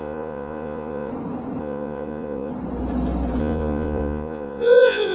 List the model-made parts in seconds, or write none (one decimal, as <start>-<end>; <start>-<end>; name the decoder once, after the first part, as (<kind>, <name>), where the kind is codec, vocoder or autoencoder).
0.0-1.1 (vocoder, Vocos); 1.6-2.5; 3.4-5.1